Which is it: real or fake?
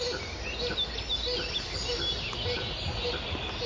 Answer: real